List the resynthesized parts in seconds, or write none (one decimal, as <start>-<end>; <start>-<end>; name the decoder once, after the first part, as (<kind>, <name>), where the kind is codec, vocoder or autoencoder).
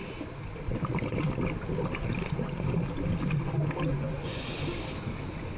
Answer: 3.9-4.5 (vocoder, Vocos)